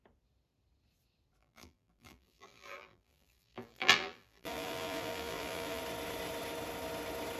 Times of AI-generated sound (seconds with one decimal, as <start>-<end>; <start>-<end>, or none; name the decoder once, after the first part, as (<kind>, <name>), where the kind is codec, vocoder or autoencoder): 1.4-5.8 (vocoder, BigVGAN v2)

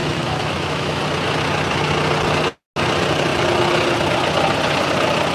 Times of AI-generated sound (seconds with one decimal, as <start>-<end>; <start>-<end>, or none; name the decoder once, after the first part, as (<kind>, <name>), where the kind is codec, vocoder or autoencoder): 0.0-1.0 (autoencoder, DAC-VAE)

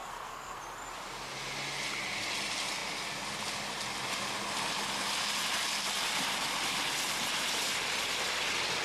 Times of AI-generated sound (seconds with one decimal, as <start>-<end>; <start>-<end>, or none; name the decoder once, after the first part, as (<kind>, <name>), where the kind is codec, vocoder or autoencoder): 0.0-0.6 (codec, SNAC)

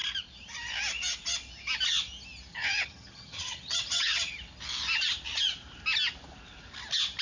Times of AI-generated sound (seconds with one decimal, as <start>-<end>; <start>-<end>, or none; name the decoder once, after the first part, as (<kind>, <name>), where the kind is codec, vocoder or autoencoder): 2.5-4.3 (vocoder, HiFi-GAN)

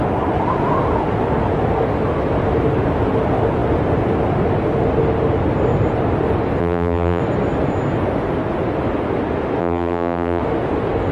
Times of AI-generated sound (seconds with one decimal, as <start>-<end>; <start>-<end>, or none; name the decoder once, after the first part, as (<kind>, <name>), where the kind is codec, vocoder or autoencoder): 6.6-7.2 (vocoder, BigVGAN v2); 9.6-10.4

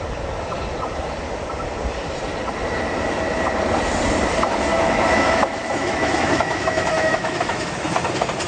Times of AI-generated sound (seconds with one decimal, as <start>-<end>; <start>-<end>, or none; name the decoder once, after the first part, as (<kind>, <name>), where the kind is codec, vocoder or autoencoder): 4.7-7.7 (autoencoder, DAC-VAE)

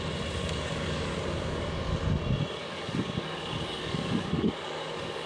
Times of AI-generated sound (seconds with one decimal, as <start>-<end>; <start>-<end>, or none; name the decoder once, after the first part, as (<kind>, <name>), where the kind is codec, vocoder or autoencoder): 0.4-1.8 (codec, DAC); 2.6-5.3